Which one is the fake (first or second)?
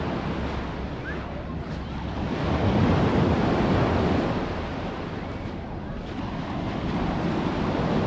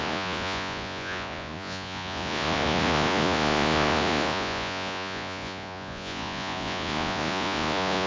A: second